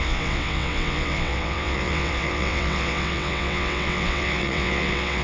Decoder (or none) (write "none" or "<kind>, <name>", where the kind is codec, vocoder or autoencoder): vocoder, WaveNeXt